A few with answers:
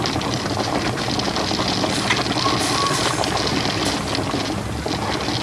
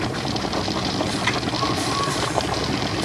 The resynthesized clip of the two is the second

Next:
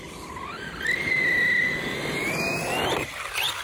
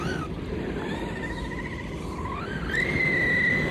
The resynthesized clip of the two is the first